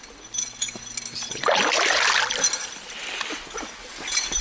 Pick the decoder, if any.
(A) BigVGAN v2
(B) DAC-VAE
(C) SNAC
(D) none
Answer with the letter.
D